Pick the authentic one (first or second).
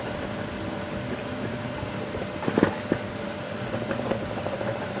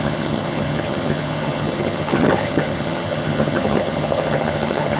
first